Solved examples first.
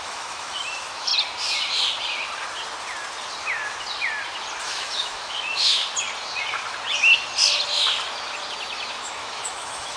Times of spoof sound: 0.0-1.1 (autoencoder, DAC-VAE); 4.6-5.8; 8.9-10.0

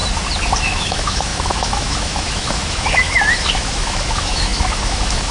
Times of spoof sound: 0.6-5.3 (autoencoder, DAC-VAE)

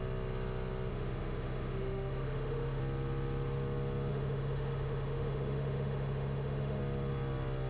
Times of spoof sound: 0.9-2.8 (autoencoder, DAC-VAE); 4.1-6.8

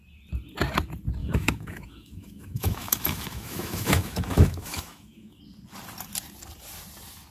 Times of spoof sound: 1.2-5.4 (autoencoder, DAC-VAE)

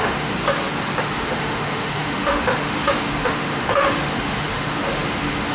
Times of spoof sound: 0.0-0.4 (autoencoder, DAC-VAE); 1.0-5.5

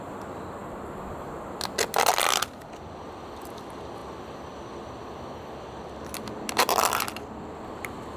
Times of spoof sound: none